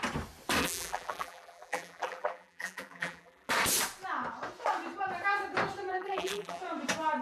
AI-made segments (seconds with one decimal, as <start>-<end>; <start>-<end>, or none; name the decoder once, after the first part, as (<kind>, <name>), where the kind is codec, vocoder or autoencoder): 0.6-3.5 (vocoder, BigVGAN v2); 5.9-6.6